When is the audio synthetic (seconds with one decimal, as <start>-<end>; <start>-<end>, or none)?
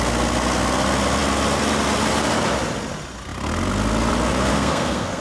4.5-5.2